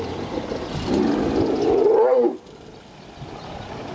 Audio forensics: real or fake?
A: real